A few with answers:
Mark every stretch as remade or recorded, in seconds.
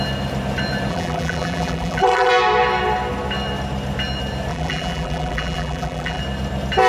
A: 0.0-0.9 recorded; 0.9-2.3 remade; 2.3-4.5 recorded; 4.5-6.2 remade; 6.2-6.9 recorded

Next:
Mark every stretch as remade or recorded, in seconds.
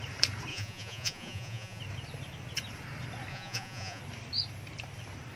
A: 0.0-0.5 recorded; 0.5-1.8 remade; 1.8-3.3 recorded; 3.3-4.0 remade; 4.0-5.4 recorded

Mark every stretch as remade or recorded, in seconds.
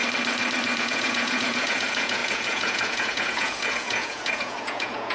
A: 0.0-0.8 recorded; 0.8-5.1 remade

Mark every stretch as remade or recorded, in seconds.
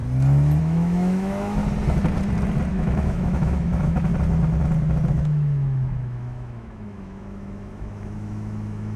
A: 0.0-0.6 recorded; 0.6-1.6 remade; 1.6-2.7 recorded; 2.7-4.1 remade; 4.1-5.1 recorded; 5.1-9.0 remade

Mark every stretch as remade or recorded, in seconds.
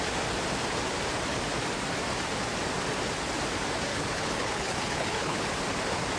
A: 0.0-3.9 recorded; 3.9-5.4 remade; 5.4-6.2 recorded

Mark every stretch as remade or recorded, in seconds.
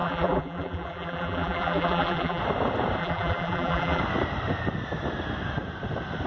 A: 0.0-2.4 remade; 2.4-3.0 recorded; 3.0-4.0 remade; 4.0-6.3 recorded